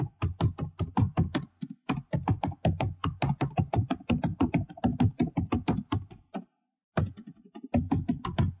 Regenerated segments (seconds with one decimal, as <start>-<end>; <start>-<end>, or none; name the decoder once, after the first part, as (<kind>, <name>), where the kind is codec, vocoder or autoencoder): none